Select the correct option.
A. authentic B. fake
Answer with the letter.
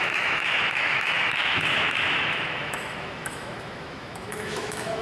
B